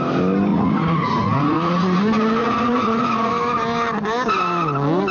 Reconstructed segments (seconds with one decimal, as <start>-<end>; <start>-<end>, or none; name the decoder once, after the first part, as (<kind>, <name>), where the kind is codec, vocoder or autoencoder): 0.5-2.0 (vocoder, Vocos); 2.4-3.3